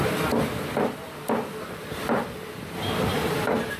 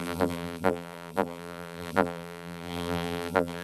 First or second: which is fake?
second